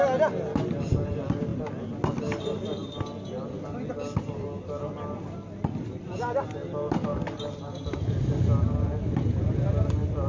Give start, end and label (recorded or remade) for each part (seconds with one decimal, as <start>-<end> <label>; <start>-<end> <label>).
0.0-10.3 recorded